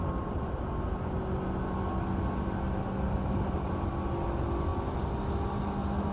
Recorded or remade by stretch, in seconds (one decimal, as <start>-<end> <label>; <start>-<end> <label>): 0.0-6.1 recorded

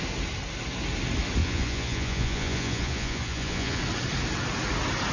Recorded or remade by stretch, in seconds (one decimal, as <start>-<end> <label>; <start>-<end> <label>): 0.0-1.4 recorded; 1.4-3.8 remade; 3.8-5.1 recorded

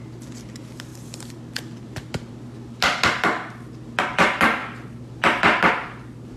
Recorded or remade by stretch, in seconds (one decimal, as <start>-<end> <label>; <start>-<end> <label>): 0.0-6.4 recorded

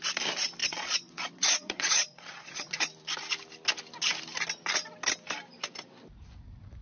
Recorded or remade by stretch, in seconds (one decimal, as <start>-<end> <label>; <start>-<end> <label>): 0.0-0.6 recorded; 0.6-2.8 remade; 2.8-6.8 recorded

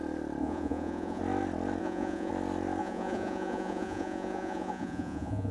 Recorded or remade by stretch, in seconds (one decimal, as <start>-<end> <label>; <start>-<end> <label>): 0.0-0.4 recorded; 0.4-1.2 remade; 1.2-1.8 recorded; 1.8-2.3 remade; 2.3-2.8 recorded; 2.8-5.5 remade

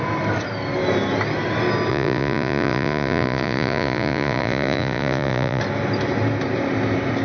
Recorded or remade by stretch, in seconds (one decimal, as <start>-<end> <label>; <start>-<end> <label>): 0.0-1.9 recorded; 1.9-5.6 remade; 5.6-7.2 recorded

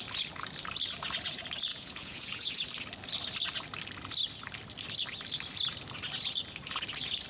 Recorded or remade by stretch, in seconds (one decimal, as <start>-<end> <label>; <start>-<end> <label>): 0.0-1.7 recorded; 1.7-2.6 remade; 2.6-7.3 recorded

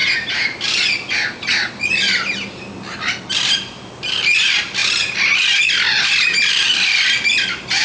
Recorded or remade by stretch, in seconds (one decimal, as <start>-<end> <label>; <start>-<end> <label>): 0.0-7.8 recorded